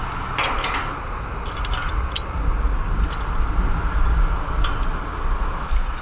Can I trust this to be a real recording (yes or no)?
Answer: yes